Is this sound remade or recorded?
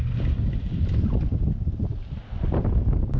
recorded